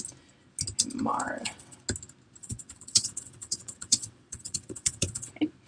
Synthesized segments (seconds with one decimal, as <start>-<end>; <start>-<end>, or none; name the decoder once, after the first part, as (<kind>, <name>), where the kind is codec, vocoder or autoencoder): 1.1-1.8 (vocoder, WaveNeXt); 2.4-5.3